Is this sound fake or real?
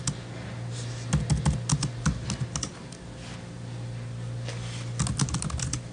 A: real